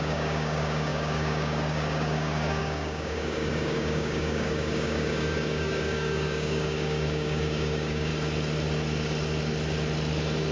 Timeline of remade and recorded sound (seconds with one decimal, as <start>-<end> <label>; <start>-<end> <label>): 0.0-8.1 remade; 8.1-10.5 recorded